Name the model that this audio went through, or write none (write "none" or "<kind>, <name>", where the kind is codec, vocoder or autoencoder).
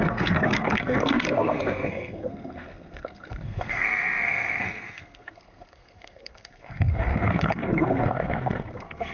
codec, SNAC